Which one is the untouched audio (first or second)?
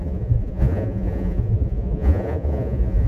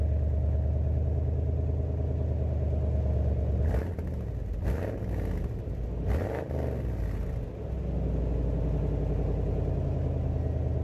second